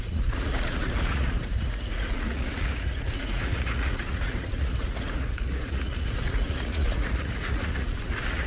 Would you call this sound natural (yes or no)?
no